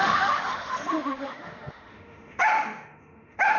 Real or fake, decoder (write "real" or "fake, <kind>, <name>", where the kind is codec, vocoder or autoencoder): fake, autoencoder, DAC-VAE